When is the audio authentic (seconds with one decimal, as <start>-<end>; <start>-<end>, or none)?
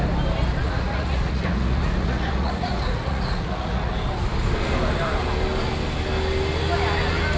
0.0-0.6; 3.9-7.4